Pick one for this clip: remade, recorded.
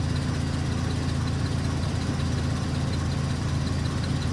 recorded